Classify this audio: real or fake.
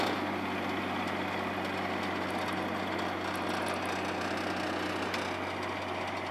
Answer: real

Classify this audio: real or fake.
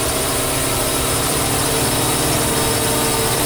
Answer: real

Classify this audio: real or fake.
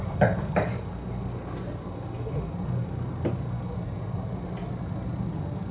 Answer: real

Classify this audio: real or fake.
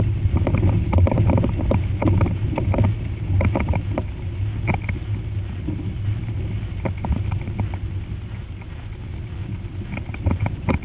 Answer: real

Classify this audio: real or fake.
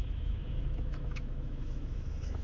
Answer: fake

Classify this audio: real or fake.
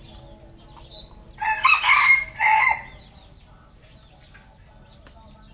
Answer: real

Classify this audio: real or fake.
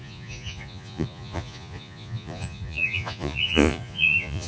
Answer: fake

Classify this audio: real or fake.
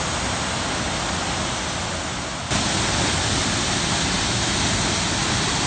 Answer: real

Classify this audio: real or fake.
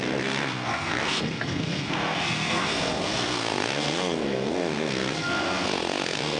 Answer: fake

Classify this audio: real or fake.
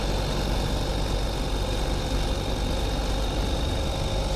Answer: real